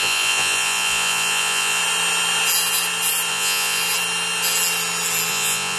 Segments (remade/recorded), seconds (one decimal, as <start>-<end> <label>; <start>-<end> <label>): 0.0-1.8 remade; 1.8-3.3 recorded; 3.3-3.8 remade; 3.8-5.3 recorded; 5.3-5.8 remade

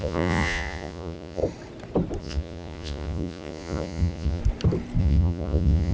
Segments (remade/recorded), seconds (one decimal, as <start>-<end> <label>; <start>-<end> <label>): 0.0-1.4 remade; 1.4-2.2 recorded; 2.2-4.4 remade; 4.4-5.0 recorded; 5.0-5.9 remade

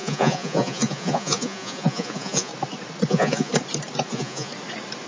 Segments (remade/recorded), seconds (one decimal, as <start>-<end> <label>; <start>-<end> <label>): 0.0-2.5 remade; 2.5-3.1 recorded; 3.1-3.5 remade; 3.5-4.1 recorded; 4.1-4.5 remade; 4.5-5.1 recorded

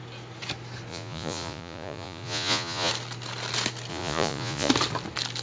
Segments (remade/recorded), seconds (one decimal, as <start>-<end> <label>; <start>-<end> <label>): 0.0-0.9 recorded; 0.9-2.9 remade; 2.9-3.9 recorded; 3.9-4.7 remade; 4.7-5.4 recorded

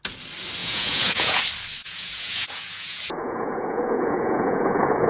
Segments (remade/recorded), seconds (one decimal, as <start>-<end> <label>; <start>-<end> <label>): 0.0-0.6 recorded; 0.6-1.4 remade; 1.4-1.8 recorded; 1.8-5.1 remade

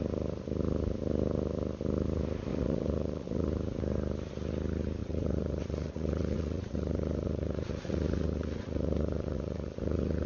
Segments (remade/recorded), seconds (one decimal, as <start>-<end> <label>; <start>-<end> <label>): 0.0-2.5 recorded; 2.5-3.5 remade; 3.5-5.0 recorded; 5.0-10.3 remade

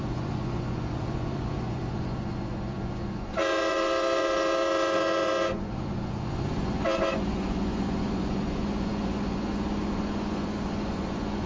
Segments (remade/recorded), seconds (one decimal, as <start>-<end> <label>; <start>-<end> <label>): 0.0-11.5 remade

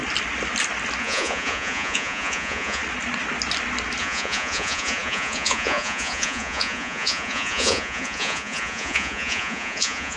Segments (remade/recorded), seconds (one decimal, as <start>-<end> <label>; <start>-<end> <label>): 0.0-1.0 recorded; 1.0-2.8 remade; 2.8-4.0 recorded; 4.0-10.2 remade